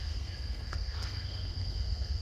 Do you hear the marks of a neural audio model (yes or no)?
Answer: yes